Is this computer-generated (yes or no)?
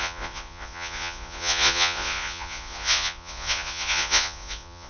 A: yes